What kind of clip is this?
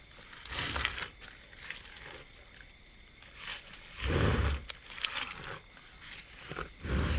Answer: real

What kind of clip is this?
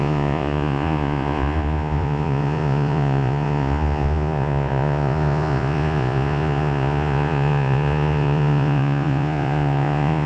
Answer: fake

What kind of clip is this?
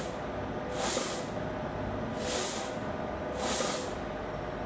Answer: real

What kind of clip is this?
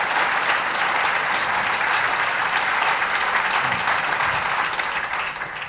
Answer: fake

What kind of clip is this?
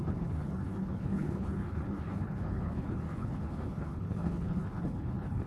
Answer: fake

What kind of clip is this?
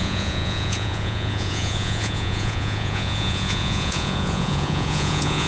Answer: fake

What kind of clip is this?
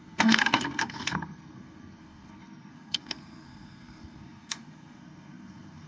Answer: fake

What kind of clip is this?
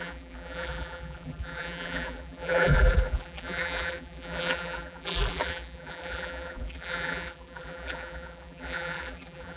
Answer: fake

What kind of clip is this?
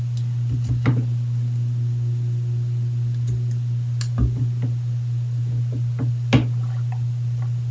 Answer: real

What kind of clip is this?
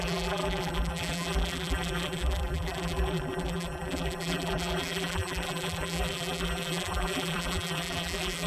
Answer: fake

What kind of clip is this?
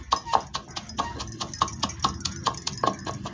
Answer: real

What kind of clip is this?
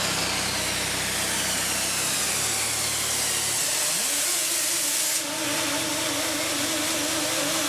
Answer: real